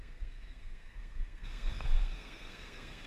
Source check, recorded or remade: remade